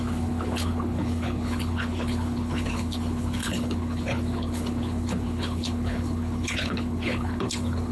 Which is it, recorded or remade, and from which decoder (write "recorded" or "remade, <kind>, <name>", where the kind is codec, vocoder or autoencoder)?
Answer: remade, codec, HILCodec